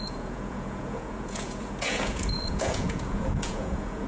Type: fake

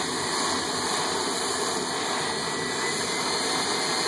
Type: real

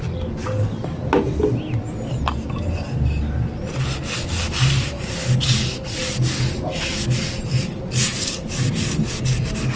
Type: real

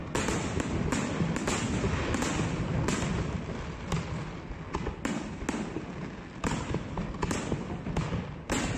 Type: real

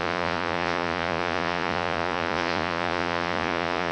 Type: fake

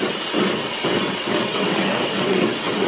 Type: fake